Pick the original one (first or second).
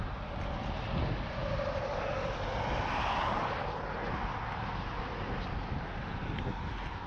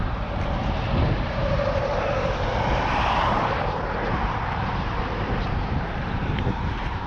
first